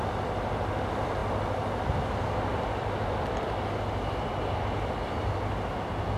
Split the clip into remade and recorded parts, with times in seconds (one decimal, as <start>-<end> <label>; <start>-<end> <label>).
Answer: 0.0-6.2 recorded